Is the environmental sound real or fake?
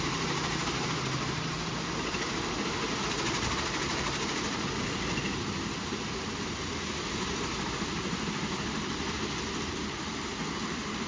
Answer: real